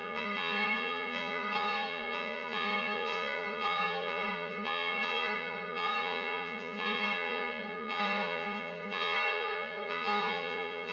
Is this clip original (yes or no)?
no